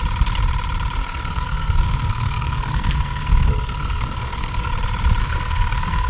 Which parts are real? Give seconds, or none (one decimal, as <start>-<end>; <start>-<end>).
0.0-1.0; 4.7-5.2